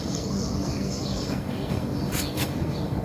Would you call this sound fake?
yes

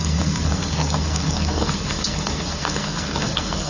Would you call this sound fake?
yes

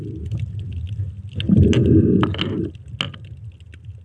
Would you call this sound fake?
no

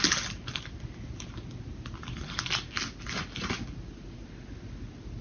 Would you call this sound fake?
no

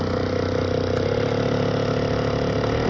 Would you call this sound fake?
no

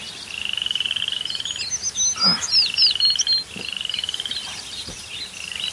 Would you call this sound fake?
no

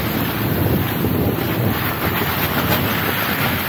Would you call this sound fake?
no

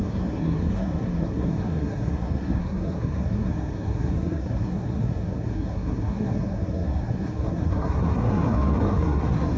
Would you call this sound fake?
yes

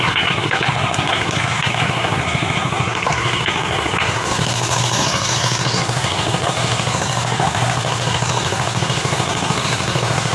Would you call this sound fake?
yes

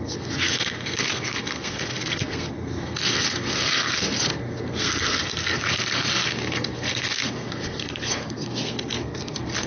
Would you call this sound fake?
yes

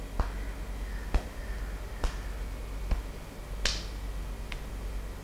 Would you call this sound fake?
no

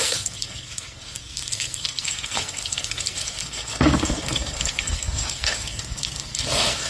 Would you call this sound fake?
yes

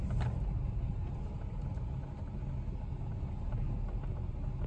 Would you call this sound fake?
no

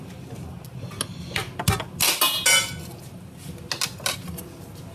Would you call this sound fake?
no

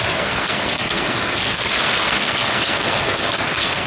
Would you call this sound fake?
yes